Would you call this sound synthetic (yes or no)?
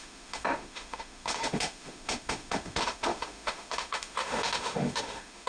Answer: yes